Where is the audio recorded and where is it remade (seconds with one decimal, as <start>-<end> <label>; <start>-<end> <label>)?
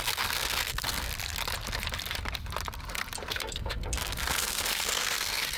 0.0-1.1 remade; 1.1-3.3 recorded; 3.3-5.6 remade